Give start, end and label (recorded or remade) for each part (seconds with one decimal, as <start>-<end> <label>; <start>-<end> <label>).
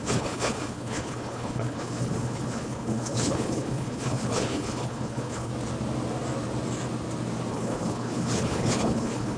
0.0-5.5 remade; 5.5-7.5 recorded; 7.5-9.4 remade